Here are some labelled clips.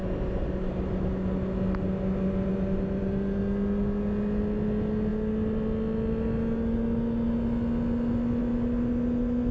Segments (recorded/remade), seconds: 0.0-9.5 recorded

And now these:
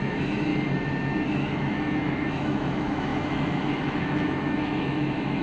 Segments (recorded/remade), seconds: 0.0-0.5 remade; 0.5-1.3 recorded; 1.3-5.4 remade

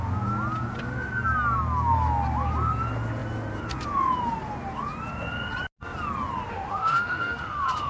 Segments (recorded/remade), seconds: 0.0-6.5 recorded; 6.5-7.9 remade

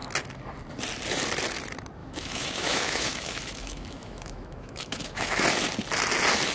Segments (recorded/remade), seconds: 0.0-2.0 recorded; 2.0-5.4 remade; 5.4-6.5 recorded

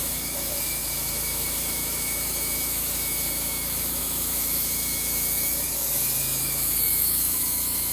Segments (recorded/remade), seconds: 0.0-7.9 remade

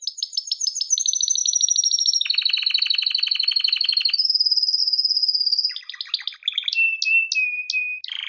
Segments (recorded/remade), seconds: 0.0-8.3 recorded